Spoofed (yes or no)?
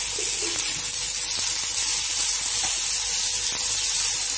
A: no